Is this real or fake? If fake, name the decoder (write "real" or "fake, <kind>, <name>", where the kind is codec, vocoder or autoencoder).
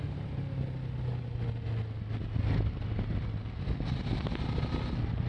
real